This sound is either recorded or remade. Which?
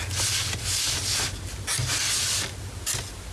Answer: recorded